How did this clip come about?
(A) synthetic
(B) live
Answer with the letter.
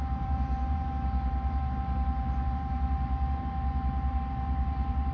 A